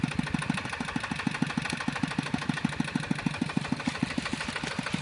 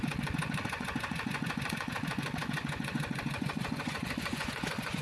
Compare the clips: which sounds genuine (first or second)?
first